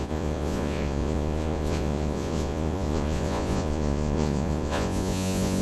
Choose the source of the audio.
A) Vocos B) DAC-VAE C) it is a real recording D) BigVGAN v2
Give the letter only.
A